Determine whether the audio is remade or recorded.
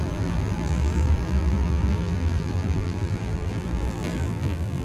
remade